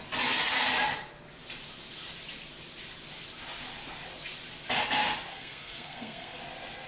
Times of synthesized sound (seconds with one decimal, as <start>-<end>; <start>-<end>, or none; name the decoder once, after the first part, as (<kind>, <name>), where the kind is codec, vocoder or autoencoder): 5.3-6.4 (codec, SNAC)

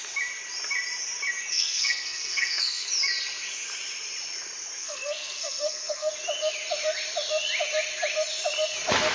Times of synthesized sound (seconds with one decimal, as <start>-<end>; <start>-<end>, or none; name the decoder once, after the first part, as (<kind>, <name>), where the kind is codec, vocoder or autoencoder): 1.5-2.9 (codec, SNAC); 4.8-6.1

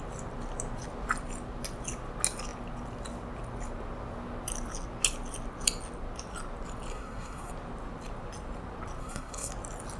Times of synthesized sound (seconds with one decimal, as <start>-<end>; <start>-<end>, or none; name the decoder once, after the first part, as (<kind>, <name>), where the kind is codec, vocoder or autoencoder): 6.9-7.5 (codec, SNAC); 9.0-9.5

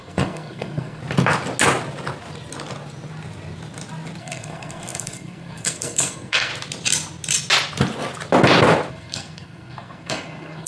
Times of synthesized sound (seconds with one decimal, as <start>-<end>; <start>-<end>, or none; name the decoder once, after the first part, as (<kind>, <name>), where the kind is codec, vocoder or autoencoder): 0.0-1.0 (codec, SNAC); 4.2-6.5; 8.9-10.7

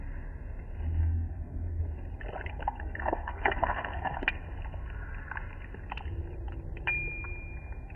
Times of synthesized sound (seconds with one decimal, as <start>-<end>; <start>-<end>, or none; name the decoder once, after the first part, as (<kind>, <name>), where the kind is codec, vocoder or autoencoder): 1.0-1.8 (codec, SNAC); 2.5-4.2

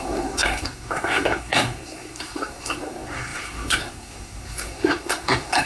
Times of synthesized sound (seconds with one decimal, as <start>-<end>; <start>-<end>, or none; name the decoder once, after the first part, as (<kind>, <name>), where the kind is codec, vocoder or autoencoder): 0.0-5.7 (codec, SNAC)

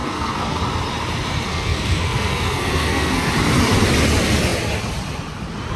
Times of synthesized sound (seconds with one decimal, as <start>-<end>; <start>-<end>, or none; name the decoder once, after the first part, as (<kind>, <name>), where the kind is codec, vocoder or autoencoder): 0.0-0.6 (codec, SNAC); 1.5-3.3

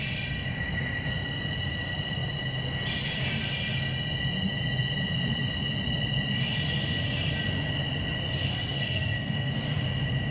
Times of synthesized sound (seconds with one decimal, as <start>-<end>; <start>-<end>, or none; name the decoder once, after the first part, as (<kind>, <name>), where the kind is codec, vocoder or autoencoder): 8.5-9.5 (codec, SNAC)